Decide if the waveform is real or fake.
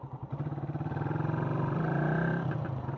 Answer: fake